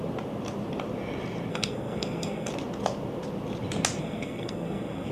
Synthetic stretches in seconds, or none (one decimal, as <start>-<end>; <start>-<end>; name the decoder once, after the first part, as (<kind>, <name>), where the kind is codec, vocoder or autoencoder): 1.5-2.5 (codec, SNAC); 4.0-5.1